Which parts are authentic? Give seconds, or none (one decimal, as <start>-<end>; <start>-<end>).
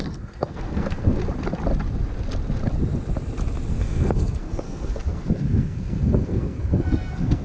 1.2-3.7